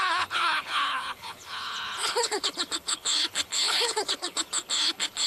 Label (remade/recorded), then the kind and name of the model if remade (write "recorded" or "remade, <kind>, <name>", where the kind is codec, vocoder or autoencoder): remade, codec, HILCodec